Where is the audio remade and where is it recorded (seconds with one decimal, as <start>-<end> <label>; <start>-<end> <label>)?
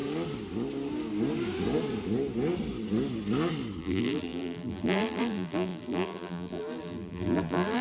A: 0.0-3.8 recorded; 3.8-7.8 remade